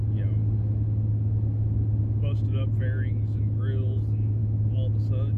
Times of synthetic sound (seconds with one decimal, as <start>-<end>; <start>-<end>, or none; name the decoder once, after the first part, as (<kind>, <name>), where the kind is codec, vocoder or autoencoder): none